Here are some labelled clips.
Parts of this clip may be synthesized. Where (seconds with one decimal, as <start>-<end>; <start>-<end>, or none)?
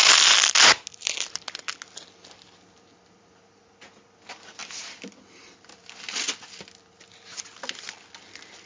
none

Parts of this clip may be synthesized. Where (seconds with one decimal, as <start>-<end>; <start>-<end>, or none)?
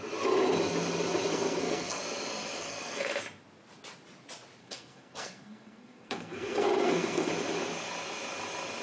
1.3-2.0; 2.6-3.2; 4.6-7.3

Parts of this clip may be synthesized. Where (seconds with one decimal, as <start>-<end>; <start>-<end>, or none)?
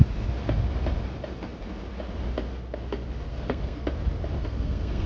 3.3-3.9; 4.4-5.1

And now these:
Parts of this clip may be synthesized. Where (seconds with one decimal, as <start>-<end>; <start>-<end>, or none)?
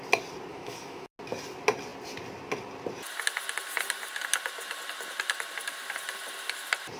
0.5-1.1